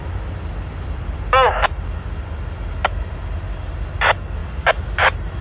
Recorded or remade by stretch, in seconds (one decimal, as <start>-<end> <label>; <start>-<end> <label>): 0.0-5.4 recorded